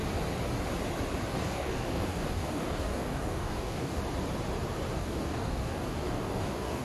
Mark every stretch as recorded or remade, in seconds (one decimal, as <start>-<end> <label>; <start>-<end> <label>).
0.0-1.3 recorded; 1.3-4.0 remade; 4.0-5.0 recorded; 5.0-6.8 remade